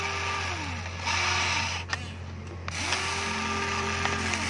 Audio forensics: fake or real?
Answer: real